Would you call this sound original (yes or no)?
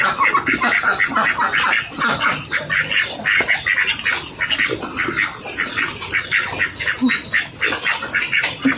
yes